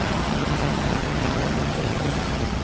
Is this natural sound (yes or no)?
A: no